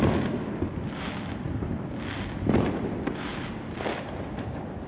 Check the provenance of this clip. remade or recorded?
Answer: recorded